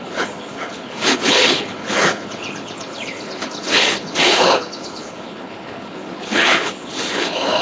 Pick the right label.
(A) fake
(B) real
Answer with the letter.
A